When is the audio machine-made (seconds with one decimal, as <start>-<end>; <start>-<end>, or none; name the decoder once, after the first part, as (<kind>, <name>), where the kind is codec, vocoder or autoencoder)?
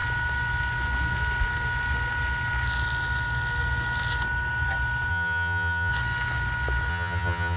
5.1-5.9 (vocoder, HiFi-GAN); 6.9-7.6